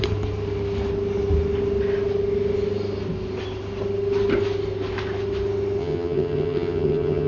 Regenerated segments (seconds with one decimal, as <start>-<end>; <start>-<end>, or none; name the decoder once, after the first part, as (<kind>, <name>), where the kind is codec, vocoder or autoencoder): 5.8-7.3 (vocoder, HiFi-GAN)